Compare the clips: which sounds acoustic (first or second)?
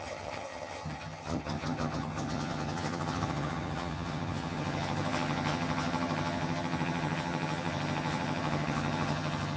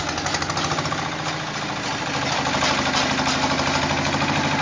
second